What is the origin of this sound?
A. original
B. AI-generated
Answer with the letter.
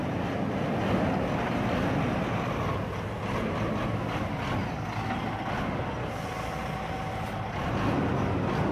A